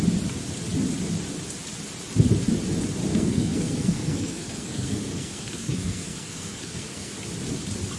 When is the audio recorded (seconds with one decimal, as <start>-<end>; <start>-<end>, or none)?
0.0-3.1; 7.1-8.0